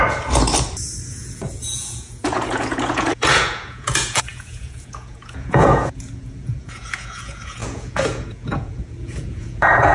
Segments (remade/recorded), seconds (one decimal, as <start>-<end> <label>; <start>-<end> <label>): 0.0-1.1 recorded; 1.1-9.9 remade